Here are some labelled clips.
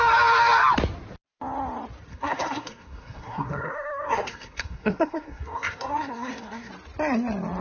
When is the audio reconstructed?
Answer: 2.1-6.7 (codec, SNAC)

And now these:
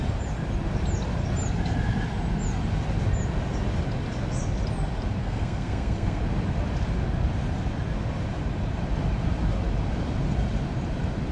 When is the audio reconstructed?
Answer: 5.2-6.2 (codec, SNAC)

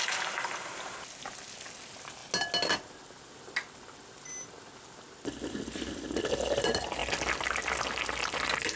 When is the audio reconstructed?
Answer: none

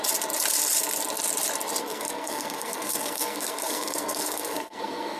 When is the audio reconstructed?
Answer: 1.8-5.2 (codec, SNAC)

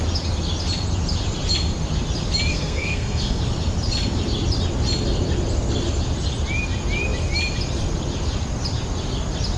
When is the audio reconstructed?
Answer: 2.5-3.4 (codec, SNAC)

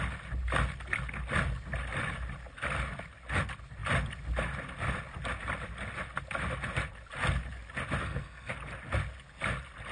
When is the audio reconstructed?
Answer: 8.0-8.5 (codec, SNAC)